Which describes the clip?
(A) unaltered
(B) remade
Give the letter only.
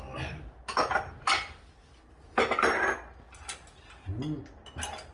A